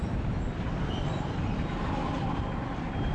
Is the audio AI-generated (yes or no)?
no